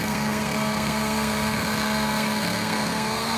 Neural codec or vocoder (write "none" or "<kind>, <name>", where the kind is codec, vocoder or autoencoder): codec, SNAC